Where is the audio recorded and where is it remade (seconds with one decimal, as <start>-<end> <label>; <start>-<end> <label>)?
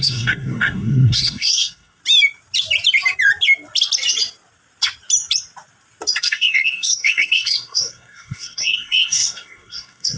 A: 0.0-2.0 remade; 2.0-6.2 recorded; 6.2-10.2 remade